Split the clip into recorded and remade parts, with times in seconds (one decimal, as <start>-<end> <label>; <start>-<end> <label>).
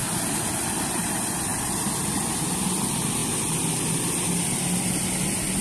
0.0-5.6 recorded